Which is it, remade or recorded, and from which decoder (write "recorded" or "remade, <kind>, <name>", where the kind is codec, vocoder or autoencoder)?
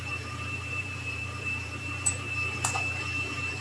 remade, vocoder, BigVGAN v2